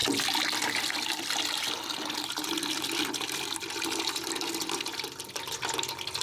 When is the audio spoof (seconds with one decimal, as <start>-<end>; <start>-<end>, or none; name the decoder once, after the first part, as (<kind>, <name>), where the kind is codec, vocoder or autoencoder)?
none